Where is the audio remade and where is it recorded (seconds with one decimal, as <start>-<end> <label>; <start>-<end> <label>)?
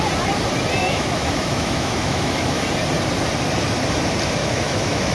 0.0-0.8 recorded; 0.8-2.6 remade; 2.6-4.4 recorded; 4.4-5.1 remade